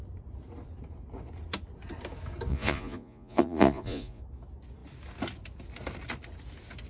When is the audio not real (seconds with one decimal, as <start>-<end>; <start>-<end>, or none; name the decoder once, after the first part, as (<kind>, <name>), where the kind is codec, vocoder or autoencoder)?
2.5-4.2 (vocoder, Vocos)